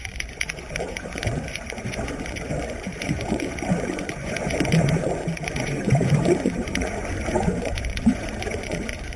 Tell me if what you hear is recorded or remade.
remade